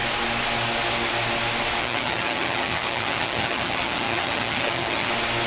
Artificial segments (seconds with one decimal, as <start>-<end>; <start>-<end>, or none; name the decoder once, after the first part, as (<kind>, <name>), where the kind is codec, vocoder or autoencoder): 1.8-5.1 (vocoder, HiFi-GAN)